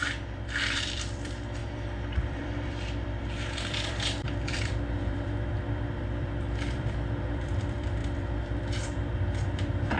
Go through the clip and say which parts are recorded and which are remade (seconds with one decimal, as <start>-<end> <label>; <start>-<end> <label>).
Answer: 0.0-10.0 remade